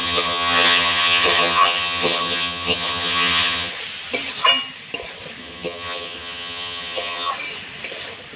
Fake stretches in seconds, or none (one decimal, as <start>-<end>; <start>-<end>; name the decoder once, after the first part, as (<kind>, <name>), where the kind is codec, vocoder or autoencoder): 0.0-3.7 (vocoder, HiFi-GAN); 5.4-7.3

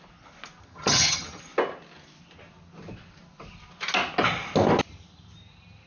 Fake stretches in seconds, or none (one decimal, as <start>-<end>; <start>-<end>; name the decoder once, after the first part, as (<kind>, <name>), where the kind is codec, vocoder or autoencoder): 0.6-1.4 (vocoder, HiFi-GAN)